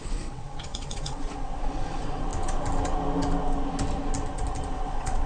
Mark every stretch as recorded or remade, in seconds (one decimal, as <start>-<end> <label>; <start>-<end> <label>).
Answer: 0.0-2.3 remade; 2.3-4.7 recorded; 4.7-5.3 remade